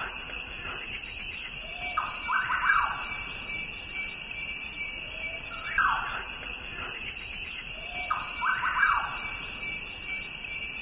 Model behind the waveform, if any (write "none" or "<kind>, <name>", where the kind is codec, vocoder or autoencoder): none